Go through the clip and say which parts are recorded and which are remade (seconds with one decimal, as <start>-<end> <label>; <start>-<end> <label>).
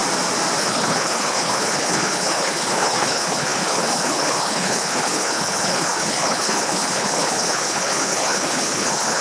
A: 0.0-0.6 recorded; 0.6-9.2 remade